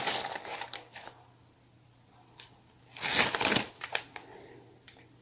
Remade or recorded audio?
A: recorded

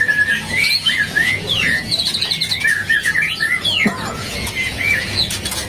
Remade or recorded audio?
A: remade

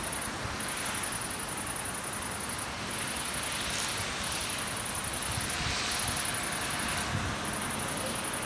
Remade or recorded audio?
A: recorded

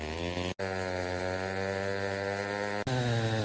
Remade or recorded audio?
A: recorded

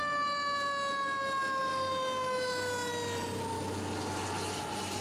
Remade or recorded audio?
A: recorded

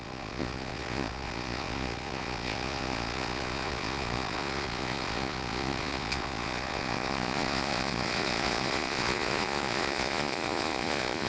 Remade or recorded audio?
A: remade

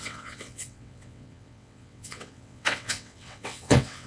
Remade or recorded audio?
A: remade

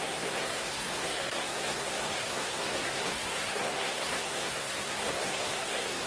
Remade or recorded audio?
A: remade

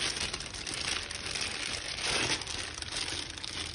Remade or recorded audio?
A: recorded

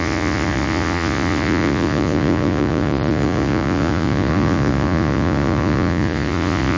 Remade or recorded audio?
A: remade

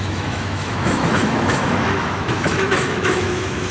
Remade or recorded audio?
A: remade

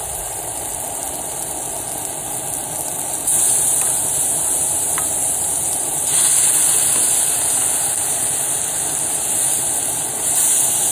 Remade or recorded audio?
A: recorded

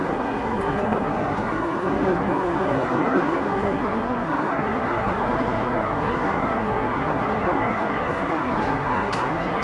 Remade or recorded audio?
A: remade